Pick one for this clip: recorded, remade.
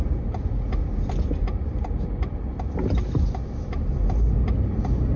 recorded